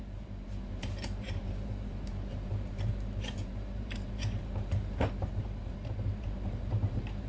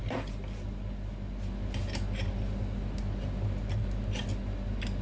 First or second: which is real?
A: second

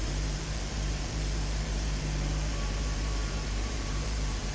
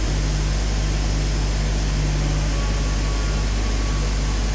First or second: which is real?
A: second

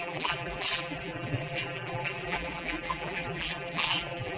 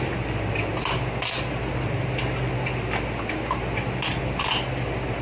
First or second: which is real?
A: second